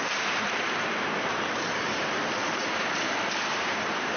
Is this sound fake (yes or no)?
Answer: yes